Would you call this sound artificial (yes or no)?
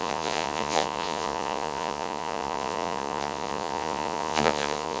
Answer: yes